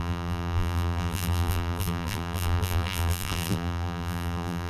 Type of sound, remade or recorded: remade